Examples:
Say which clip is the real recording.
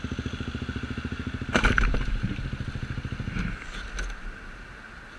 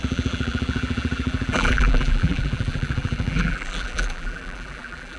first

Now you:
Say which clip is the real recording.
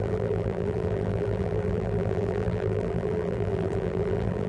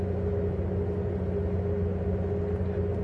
second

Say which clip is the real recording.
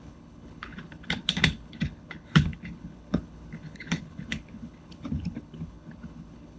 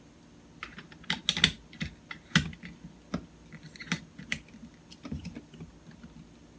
second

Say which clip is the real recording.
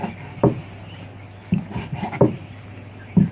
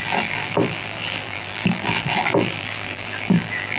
first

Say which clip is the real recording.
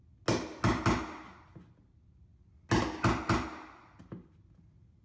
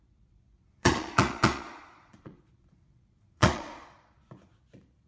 first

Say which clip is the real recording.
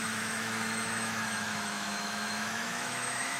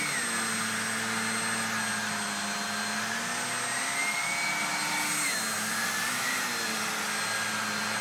second